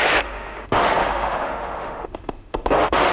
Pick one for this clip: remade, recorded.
remade